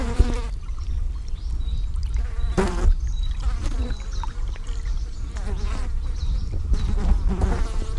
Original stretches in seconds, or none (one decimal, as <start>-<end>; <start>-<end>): 0.0-8.0